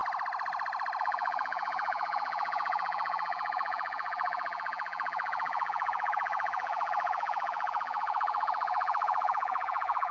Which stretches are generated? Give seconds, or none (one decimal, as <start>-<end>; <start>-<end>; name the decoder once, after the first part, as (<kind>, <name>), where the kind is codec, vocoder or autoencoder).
1.0-10.1 (vocoder, BigVGAN v2)